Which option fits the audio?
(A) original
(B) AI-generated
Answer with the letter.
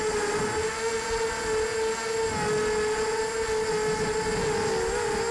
A